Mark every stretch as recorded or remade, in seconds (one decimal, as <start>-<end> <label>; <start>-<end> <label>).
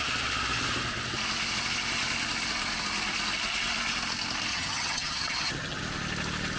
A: 0.0-4.5 recorded; 4.5-5.8 remade; 5.8-6.6 recorded